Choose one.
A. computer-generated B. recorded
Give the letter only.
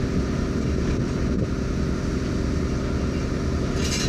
B